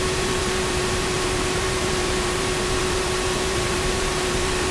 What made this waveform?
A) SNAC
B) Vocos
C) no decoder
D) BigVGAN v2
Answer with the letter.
D